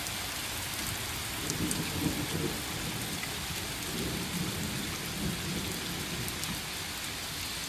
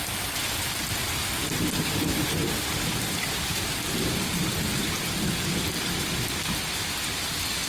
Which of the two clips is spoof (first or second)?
second